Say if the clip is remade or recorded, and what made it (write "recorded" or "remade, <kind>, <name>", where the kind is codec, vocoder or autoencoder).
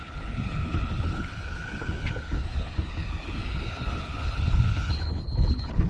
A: remade, codec, HILCodec